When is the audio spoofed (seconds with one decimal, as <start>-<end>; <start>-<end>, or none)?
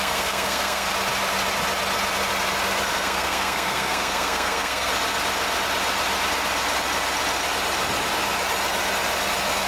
0.0-0.9; 2.9-4.9